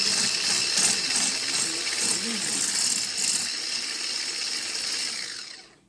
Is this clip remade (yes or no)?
no